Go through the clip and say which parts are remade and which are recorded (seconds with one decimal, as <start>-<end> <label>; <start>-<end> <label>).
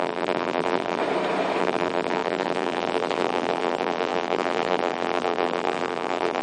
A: 0.0-1.0 remade; 1.0-1.6 recorded; 1.6-6.4 remade